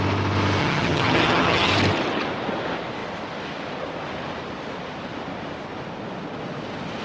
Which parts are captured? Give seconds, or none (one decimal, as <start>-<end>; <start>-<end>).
0.0-0.6; 1.7-7.0